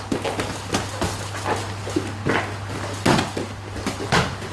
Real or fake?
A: real